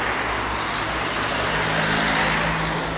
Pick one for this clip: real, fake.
real